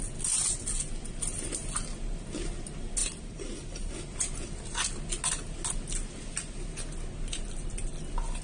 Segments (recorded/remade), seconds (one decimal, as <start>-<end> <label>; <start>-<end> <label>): 0.0-8.4 recorded